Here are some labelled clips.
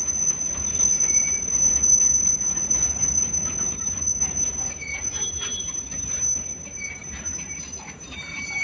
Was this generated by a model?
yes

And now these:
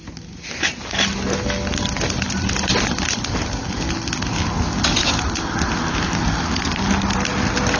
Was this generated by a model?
no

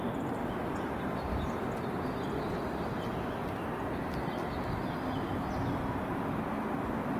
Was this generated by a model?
no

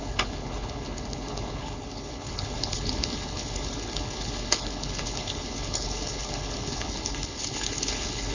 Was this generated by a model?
yes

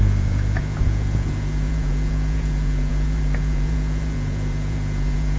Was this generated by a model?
yes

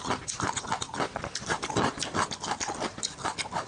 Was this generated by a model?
no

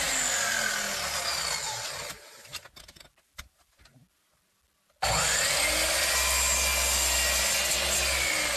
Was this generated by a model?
no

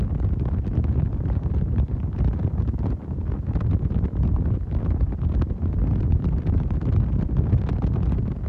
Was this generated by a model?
no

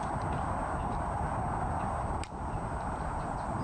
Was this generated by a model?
no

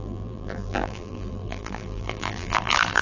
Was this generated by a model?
yes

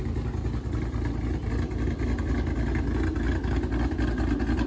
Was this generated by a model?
no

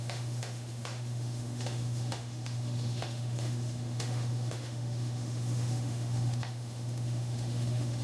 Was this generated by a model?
yes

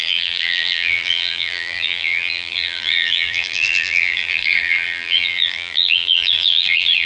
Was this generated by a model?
yes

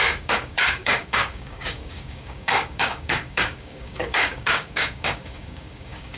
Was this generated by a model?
yes